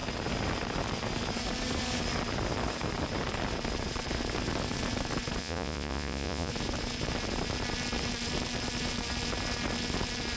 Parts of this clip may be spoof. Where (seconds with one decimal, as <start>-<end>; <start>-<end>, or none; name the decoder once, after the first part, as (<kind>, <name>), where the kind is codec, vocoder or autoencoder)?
5.4-6.5 (vocoder, Vocos)